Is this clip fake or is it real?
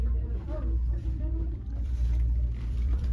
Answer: fake